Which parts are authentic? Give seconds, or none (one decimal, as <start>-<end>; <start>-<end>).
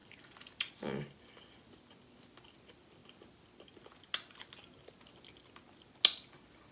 0.0-6.7